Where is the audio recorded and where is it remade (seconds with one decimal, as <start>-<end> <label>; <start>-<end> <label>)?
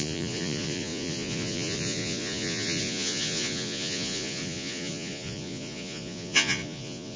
0.0-7.2 remade